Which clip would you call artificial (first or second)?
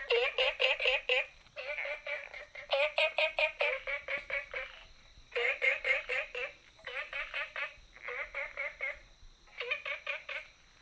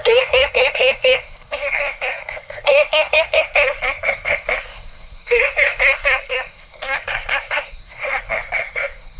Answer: second